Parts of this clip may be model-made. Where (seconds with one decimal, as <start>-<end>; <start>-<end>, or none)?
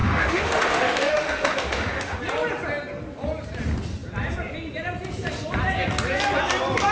0.0-2.2